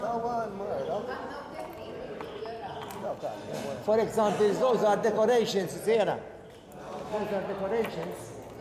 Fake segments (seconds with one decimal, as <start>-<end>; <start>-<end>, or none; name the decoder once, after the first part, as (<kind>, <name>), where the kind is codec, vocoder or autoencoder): none